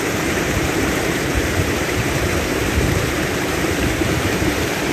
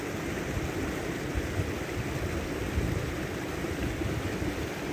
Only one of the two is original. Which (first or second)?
second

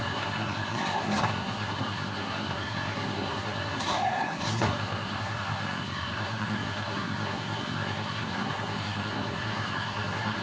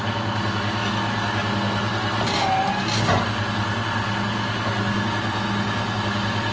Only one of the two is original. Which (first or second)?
second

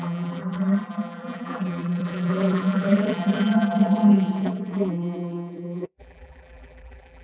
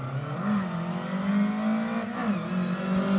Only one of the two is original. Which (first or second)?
second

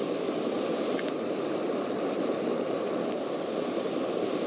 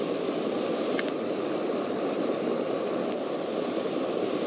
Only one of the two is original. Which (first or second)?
first